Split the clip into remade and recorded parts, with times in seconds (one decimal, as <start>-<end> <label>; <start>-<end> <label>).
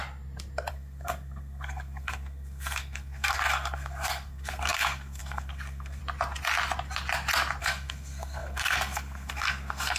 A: 0.0-0.7 recorded; 0.7-6.0 remade; 6.0-7.6 recorded; 7.6-10.0 remade